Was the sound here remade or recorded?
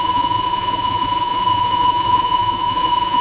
remade